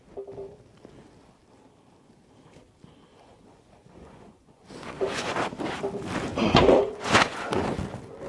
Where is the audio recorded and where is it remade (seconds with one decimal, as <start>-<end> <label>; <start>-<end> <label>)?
0.0-3.1 recorded; 3.1-5.4 remade; 5.4-6.3 recorded; 6.3-7.7 remade; 7.7-8.3 recorded